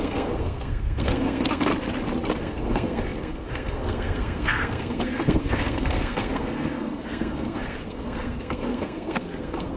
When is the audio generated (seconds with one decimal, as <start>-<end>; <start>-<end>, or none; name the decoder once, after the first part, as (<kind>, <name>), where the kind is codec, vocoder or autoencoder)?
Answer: 0.0-1.7 (codec, SNAC); 2.4-9.8